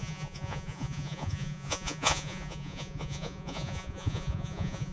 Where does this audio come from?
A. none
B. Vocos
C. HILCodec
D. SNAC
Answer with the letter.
B